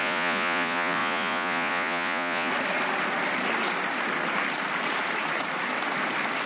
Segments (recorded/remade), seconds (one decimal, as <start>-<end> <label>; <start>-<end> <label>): 0.0-2.5 remade; 2.5-6.5 recorded